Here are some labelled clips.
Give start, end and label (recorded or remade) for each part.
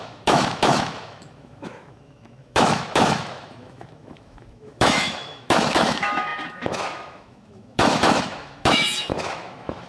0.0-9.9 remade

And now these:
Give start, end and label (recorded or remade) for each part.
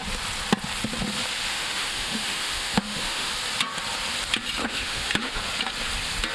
0.0-1.5 recorded; 1.5-3.3 remade; 3.3-4.6 recorded; 4.6-5.4 remade; 5.4-6.3 recorded